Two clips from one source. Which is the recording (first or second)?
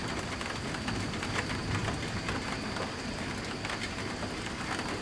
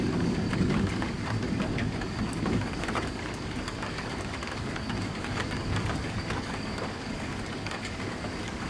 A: first